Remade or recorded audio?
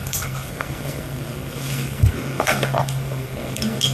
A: remade